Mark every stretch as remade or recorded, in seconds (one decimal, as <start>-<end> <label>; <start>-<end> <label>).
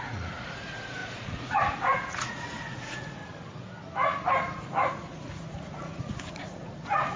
0.0-3.2 remade; 3.2-4.9 recorded; 4.9-7.2 remade